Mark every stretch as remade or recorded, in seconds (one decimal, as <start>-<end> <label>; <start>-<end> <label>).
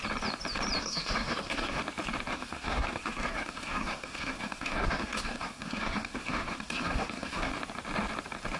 0.0-0.8 recorded; 0.8-1.8 remade; 1.8-2.3 recorded; 2.3-7.5 remade; 7.5-8.6 recorded